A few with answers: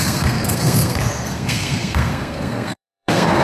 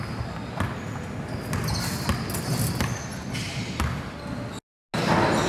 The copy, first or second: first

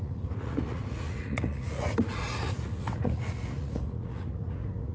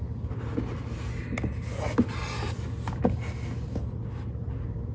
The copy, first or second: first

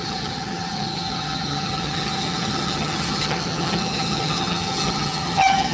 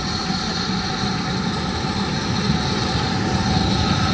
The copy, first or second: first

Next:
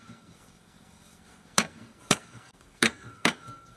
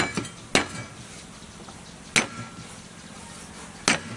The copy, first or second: first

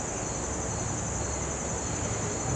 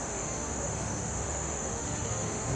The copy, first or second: second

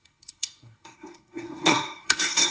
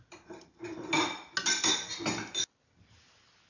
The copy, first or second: first